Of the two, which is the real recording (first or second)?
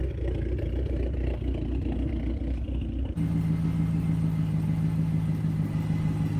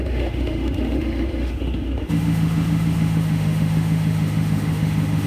first